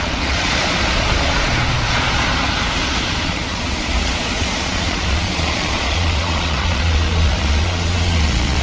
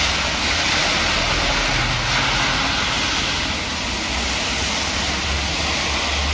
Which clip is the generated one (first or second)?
first